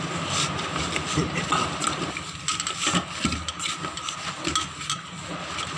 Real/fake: real